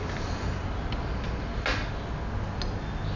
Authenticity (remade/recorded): recorded